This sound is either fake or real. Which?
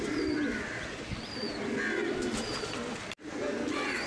real